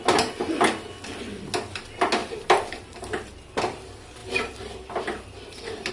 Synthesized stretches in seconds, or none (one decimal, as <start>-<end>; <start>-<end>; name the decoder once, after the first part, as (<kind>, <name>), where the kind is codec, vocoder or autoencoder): 2.2-3.6 (vocoder, BigVGAN v2); 4.2-5.9